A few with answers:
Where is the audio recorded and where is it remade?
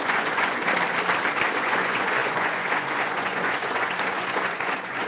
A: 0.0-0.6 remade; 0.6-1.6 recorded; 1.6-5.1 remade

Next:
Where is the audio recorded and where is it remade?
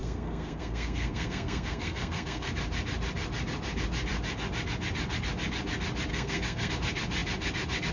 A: 0.0-2.5 remade; 2.5-6.1 recorded; 6.1-6.7 remade; 6.7-7.9 recorded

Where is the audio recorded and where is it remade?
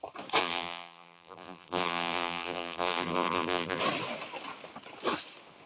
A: 0.0-0.4 recorded; 0.4-3.8 remade; 3.8-5.7 recorded